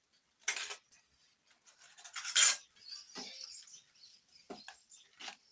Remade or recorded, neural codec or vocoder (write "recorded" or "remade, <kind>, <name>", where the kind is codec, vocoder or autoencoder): recorded